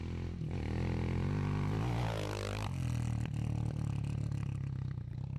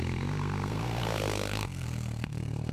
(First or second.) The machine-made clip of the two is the second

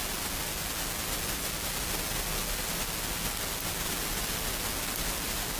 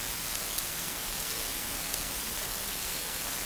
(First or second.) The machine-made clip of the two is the second